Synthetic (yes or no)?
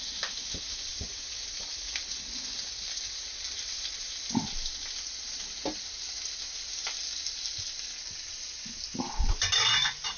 no